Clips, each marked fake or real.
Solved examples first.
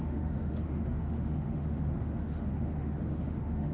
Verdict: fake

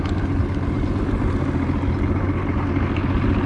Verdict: real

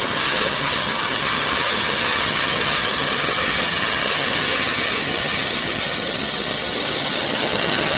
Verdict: fake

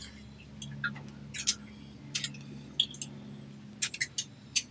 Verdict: real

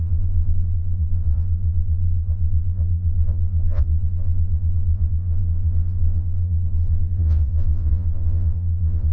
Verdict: fake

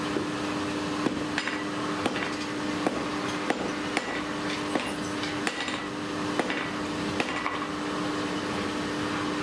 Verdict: real